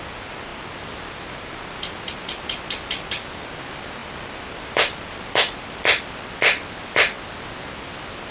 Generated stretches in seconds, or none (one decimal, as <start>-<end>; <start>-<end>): none